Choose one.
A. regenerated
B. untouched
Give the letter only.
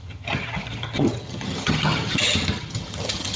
A